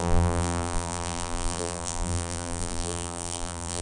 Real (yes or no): no